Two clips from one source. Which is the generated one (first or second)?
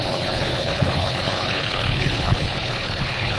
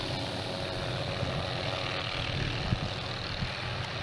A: first